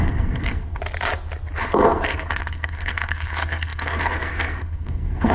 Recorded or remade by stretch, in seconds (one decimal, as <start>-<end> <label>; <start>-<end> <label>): 0.0-0.8 remade; 0.8-1.6 recorded; 1.6-5.3 remade